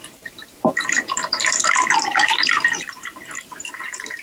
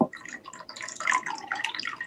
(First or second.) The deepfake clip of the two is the first